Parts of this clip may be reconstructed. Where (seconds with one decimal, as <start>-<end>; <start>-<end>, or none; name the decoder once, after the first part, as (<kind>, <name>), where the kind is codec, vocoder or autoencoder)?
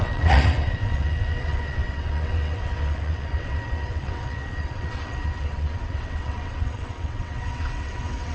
0.0-8.3 (vocoder, WaveNeXt)